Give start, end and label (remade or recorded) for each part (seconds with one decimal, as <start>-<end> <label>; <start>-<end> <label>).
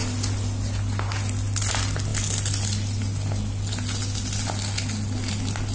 0.0-5.7 recorded